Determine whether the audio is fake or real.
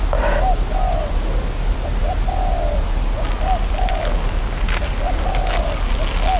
real